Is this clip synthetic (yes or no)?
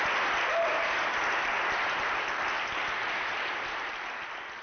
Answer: no